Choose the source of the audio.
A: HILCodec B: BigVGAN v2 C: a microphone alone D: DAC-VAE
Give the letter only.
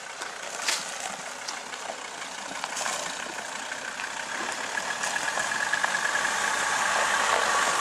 C